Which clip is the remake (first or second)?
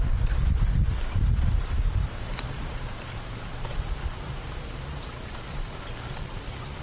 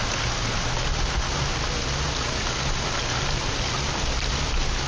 first